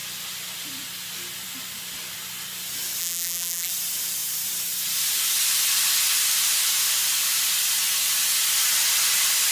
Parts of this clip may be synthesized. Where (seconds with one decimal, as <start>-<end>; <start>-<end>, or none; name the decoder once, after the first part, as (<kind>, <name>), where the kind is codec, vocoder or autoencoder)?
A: 3.0-3.7 (vocoder, BigVGAN v2)